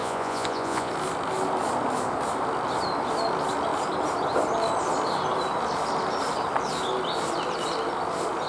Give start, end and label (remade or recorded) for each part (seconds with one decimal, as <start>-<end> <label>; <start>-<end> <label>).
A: 0.0-0.9 remade; 0.9-8.5 recorded